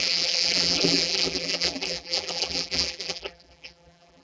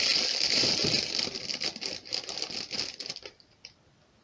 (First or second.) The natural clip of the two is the second